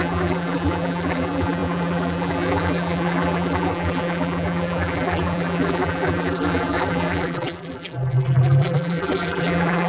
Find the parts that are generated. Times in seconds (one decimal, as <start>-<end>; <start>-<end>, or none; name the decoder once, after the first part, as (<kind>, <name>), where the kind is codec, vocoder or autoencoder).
0.0-9.9 (vocoder, BigVGAN v2)